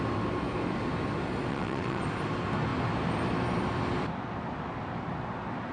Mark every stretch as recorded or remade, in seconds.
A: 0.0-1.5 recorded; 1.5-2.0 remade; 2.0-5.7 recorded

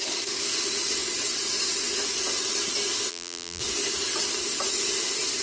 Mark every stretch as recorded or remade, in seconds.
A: 0.0-3.1 recorded; 3.1-3.6 remade; 3.6-5.4 recorded

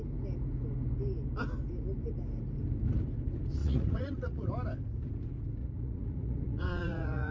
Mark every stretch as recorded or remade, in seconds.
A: 0.0-3.6 recorded; 3.6-4.5 remade; 4.5-5.6 recorded; 5.6-7.3 remade

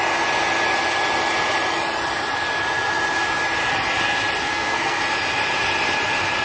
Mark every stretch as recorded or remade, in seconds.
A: 0.0-4.4 recorded; 4.4-5.0 remade; 5.0-6.4 recorded

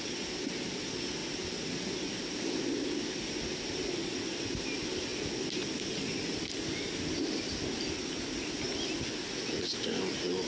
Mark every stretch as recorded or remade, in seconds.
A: 0.0-10.5 recorded

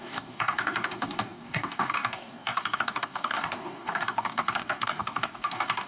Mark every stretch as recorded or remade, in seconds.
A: 0.0-5.9 remade